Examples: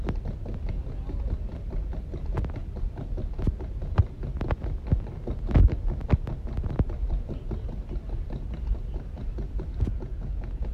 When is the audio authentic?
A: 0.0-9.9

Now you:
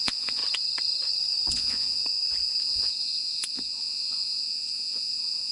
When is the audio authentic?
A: 0.4-1.5; 2.0-2.6

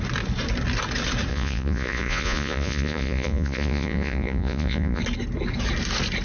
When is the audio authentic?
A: 0.0-1.3; 5.0-6.2

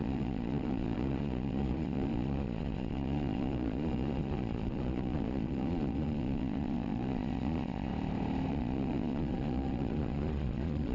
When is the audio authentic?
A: 7.9-8.5

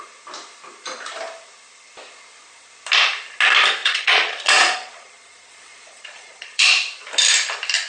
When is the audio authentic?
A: 0.0-3.8; 6.7-7.9

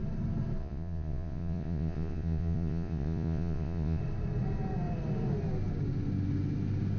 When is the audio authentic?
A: 0.0-0.6; 4.0-7.0

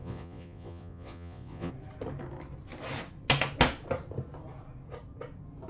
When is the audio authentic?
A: 1.7-5.7